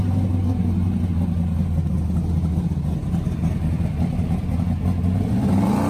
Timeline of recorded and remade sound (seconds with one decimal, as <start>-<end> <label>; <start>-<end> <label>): 0.0-5.9 recorded